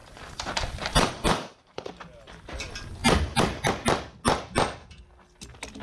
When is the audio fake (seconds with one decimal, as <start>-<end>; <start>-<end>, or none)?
0.0-1.9; 3.0-3.7